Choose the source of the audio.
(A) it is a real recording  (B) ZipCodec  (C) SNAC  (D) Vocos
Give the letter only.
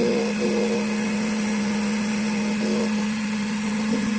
A